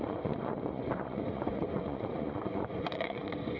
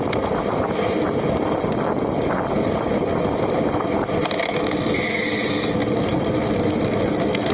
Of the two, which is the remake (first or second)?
first